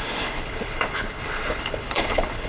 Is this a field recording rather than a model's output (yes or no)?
no